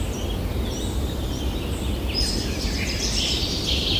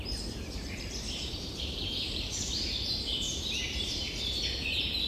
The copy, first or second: second